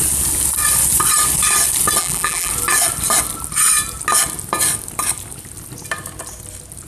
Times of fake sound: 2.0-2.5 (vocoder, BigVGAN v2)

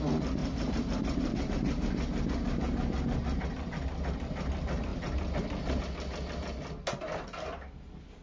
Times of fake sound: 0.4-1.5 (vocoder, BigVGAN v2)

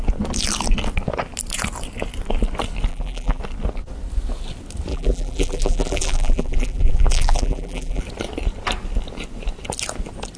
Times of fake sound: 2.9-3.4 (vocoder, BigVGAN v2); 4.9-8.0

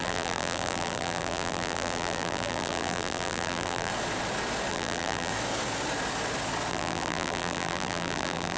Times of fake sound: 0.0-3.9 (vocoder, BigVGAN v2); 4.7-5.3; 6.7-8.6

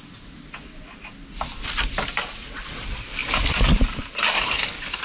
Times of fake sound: 3.2-4.0 (vocoder, BigVGAN v2)

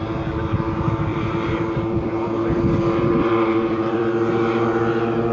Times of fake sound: 1.1-4.3 (vocoder, BigVGAN v2)

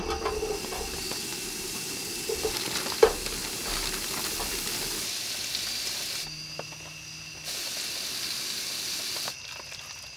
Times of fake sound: 1.3-2.3 (vocoder, BigVGAN v2)

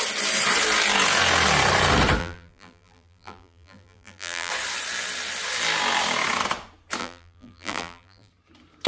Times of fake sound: 2.2-4.5 (vocoder, BigVGAN v2); 7.0-8.3